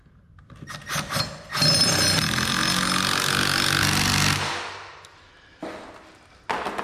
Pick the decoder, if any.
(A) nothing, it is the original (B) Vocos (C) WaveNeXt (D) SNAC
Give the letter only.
A